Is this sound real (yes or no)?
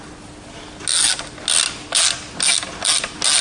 yes